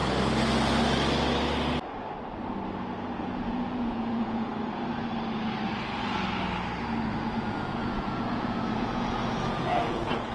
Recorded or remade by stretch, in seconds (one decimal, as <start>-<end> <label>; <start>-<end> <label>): 0.0-3.2 recorded; 3.2-4.5 remade; 4.5-7.1 recorded; 7.1-10.3 remade